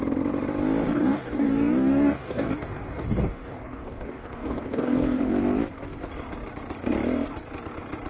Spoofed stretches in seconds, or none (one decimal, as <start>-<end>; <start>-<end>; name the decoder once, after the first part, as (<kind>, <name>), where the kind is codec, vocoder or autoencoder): 0.8-5.2 (codec, DAC)